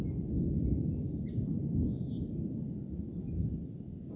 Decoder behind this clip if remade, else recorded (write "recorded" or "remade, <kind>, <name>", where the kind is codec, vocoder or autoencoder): recorded